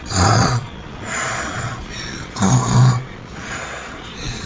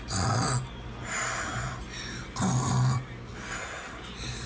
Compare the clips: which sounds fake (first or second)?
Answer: first